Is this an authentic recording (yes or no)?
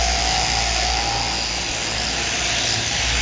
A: yes